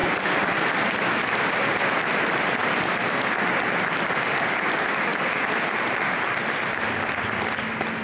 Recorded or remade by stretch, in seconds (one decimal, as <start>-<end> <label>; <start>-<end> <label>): 0.0-8.0 recorded